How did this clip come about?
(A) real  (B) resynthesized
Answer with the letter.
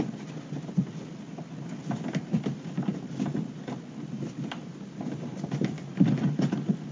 A